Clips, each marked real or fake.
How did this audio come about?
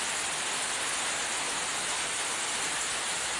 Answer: real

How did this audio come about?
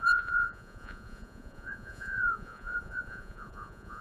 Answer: fake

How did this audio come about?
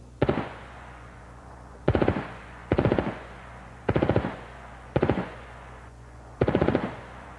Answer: fake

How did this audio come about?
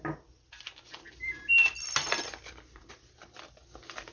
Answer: real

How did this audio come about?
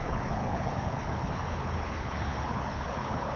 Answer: fake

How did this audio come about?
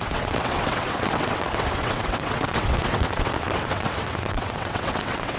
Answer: fake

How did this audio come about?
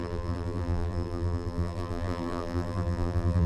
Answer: fake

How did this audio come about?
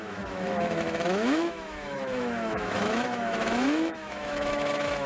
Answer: fake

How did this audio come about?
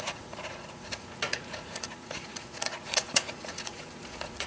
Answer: fake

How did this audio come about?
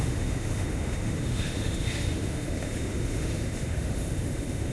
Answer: fake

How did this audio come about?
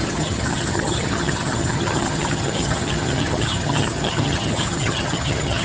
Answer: fake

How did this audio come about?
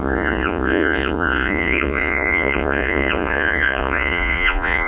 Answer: fake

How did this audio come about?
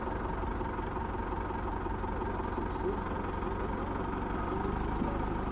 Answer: real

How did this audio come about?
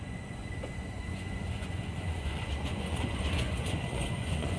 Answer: fake